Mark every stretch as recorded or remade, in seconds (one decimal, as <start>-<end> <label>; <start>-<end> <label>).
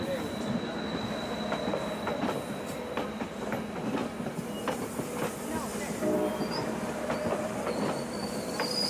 0.0-8.9 recorded